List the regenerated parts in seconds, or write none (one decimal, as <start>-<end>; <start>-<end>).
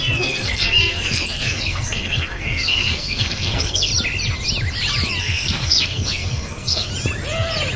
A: 0.0-3.9; 5.2-6.9